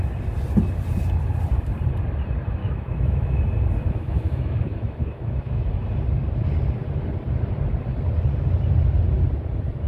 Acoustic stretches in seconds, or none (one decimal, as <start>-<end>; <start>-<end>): 0.0-2.6; 3.4-3.8; 5.7-9.9